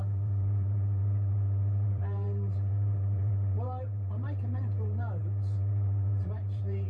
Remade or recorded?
remade